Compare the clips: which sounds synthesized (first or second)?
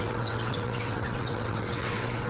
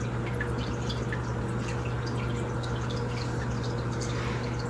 first